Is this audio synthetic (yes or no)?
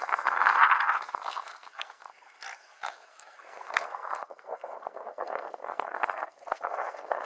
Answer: yes